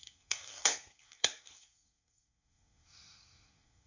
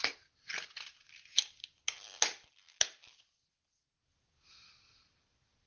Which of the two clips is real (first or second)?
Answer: second